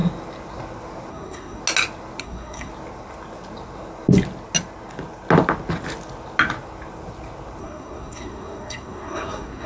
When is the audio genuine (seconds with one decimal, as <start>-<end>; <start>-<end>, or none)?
0.0-1.1; 1.6-2.2; 2.7-7.6